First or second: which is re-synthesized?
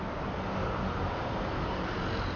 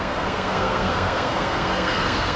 second